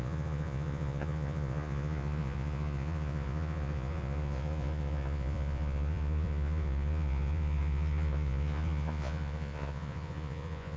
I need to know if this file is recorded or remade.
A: remade